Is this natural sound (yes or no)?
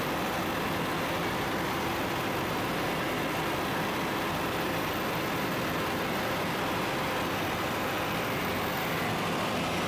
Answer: yes